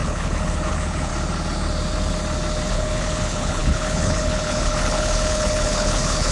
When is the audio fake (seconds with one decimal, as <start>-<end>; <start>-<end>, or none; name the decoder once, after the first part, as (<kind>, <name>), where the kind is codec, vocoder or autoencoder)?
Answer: 0.0-1.1 (codec, HILCodec); 2.7-6.3